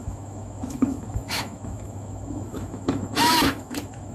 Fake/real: fake